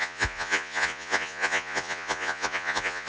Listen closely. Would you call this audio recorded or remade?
remade